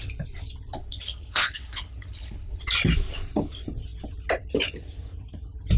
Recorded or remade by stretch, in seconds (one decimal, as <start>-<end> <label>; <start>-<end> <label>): 0.0-0.8 recorded; 0.8-2.6 remade; 2.6-5.8 recorded